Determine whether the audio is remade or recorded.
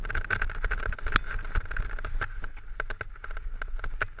recorded